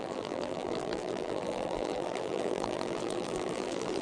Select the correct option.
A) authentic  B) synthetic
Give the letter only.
B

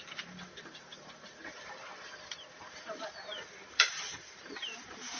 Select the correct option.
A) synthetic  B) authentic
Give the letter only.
A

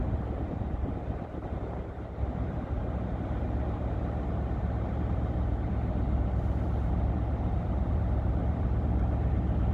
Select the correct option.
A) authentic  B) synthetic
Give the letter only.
B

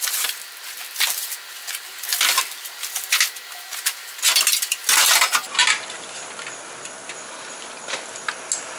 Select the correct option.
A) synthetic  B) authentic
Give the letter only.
B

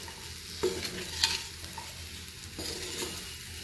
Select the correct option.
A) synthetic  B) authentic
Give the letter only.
B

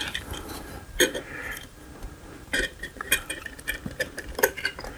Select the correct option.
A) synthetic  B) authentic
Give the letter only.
A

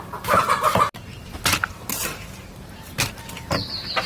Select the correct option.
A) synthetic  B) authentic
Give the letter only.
A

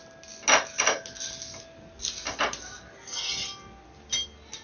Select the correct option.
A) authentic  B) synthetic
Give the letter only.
A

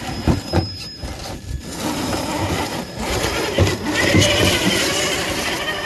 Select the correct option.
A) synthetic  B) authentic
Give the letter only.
A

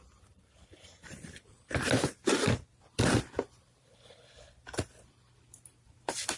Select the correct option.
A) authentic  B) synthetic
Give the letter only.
B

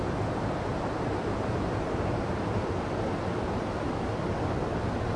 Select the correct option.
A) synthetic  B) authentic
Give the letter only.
B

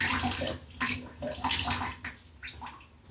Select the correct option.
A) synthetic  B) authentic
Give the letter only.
B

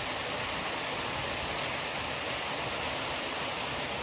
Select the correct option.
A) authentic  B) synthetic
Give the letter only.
A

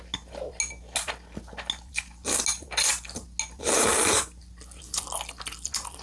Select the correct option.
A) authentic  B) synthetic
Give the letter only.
A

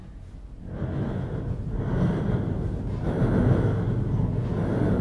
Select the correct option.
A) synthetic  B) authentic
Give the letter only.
B